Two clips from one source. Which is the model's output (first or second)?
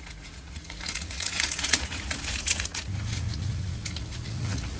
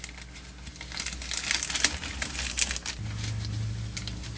first